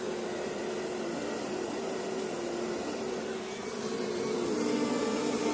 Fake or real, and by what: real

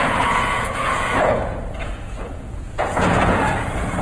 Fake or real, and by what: fake, vocoder, Vocos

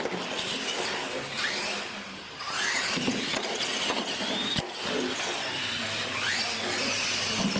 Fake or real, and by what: real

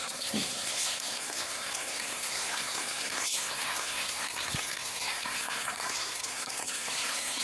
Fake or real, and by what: fake, codec, SNAC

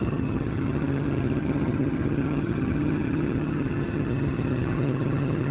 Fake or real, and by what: fake, vocoder, HiFi-GAN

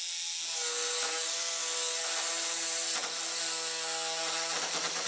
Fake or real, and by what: real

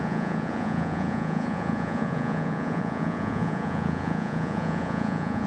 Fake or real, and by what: fake, vocoder, Vocos